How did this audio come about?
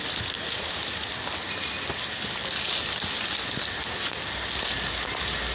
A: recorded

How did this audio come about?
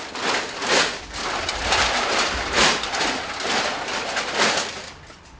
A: recorded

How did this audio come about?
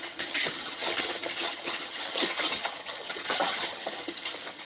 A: remade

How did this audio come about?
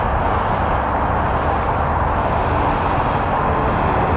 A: recorded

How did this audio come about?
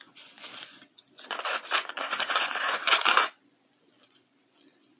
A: remade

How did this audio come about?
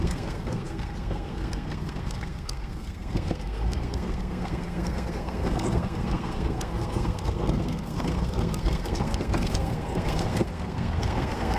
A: remade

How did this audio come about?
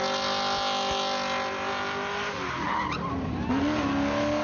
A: recorded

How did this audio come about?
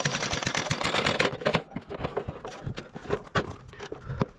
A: recorded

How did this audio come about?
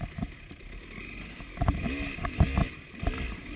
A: recorded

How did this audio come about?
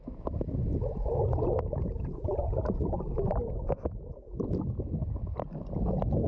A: recorded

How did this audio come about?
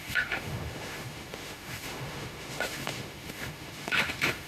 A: remade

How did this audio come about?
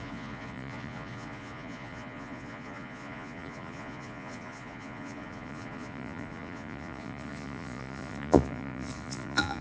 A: remade